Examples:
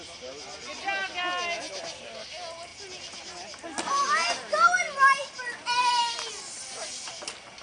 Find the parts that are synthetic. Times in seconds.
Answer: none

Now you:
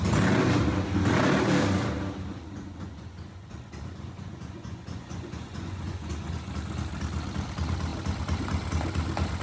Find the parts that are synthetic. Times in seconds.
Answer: 2.3-6.5 (vocoder, Vocos)

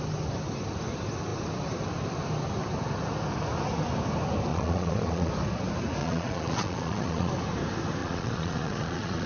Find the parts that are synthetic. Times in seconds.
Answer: 4.5-5.3 (vocoder, Vocos); 6.0-7.3; 8.0-9.3